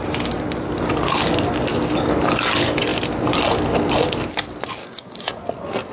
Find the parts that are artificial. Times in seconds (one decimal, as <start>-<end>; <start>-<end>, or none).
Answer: 4.8-5.3